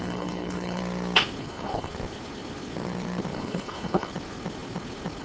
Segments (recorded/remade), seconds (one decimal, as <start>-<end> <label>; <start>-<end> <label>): 0.0-0.8 remade; 0.8-1.4 recorded; 1.4-1.9 remade; 1.9-3.3 recorded; 3.3-4.1 remade; 4.1-5.2 recorded